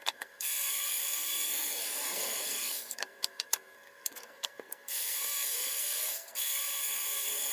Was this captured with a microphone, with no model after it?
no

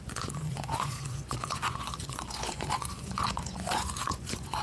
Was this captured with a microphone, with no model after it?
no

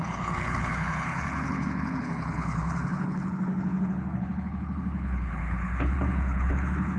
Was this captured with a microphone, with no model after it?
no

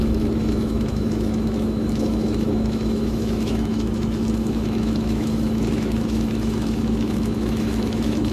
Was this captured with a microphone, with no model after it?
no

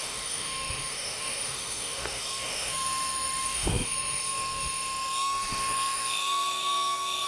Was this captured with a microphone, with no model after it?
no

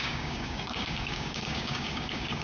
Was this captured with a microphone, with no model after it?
no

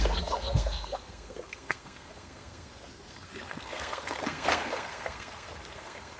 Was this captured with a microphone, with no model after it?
no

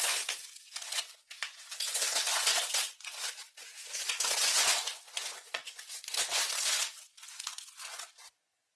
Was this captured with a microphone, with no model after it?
no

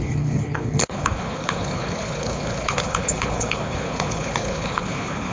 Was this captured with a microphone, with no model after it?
no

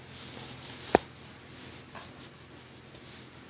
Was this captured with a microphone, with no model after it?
yes